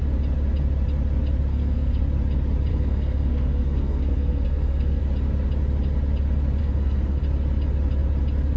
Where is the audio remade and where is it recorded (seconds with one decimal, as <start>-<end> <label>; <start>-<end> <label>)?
0.0-1.5 recorded; 1.5-2.0 remade; 2.0-2.7 recorded; 2.7-5.0 remade; 5.0-6.6 recorded; 6.6-7.2 remade; 7.2-8.6 recorded